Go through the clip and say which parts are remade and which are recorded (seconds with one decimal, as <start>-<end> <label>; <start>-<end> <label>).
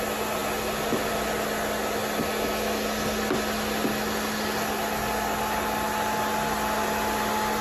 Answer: 0.0-7.6 recorded